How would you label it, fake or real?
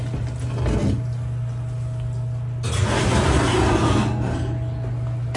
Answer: real